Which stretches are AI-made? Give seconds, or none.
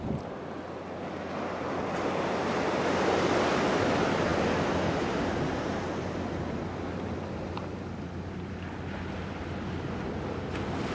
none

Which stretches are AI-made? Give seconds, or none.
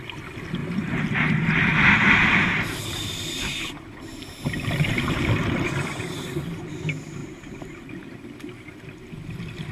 0.6-3.2; 4.9-6.7; 7.2-7.9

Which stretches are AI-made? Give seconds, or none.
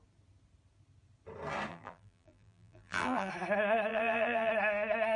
1.7-3.3; 3.9-4.5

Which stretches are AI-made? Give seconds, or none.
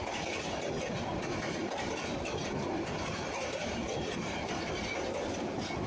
1.6-4.5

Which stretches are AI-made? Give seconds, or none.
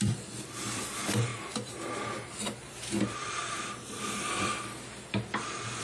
0.0-5.8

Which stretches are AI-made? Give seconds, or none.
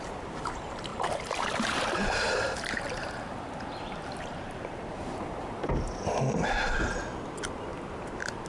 0.9-6.0